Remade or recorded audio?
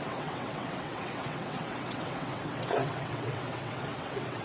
remade